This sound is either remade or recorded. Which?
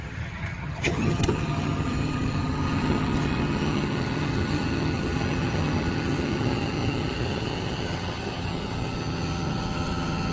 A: remade